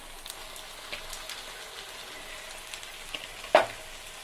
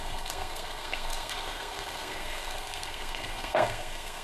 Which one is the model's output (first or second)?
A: second